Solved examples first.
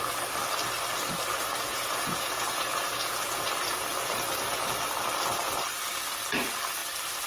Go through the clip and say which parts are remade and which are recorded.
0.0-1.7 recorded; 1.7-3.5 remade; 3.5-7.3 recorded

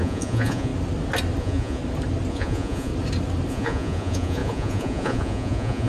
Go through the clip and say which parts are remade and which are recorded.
0.0-0.7 remade; 0.7-1.4 recorded; 1.4-1.8 remade; 1.8-2.3 recorded; 2.3-2.9 remade; 2.9-3.5 recorded; 3.5-5.9 remade